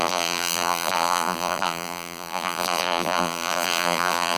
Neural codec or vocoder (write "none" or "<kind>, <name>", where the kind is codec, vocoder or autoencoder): vocoder, BigVGAN v2